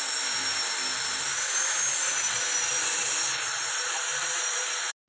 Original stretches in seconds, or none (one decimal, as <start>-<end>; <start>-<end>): 0.0-5.1

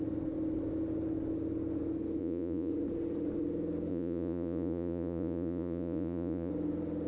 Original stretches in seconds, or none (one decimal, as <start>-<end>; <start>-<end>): 0.0-2.2; 2.7-3.9; 6.5-7.1

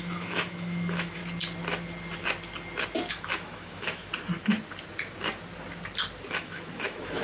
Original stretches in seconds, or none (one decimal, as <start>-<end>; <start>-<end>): 1.2-3.1; 4.1-6.4

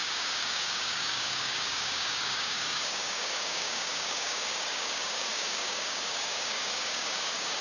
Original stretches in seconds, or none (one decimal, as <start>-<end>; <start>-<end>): none

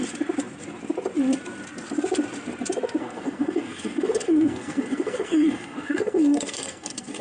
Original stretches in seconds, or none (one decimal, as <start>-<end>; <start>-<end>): 0.0-3.0

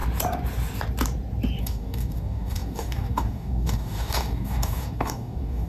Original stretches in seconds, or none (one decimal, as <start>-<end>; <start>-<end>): 0.0-1.6

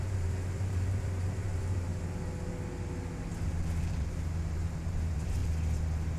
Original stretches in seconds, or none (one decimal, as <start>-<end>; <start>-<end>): 1.9-3.9; 5.4-6.2